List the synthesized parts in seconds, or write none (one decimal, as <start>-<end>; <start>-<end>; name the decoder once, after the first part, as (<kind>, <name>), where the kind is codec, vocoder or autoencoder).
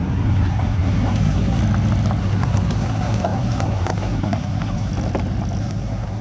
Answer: 0.0-1.6 (codec, SNAC); 2.2-4.9; 5.6-6.2